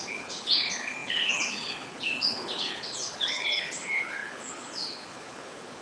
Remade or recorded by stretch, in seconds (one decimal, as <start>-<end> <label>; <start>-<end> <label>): 0.0-5.8 remade